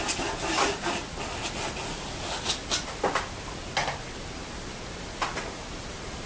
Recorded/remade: recorded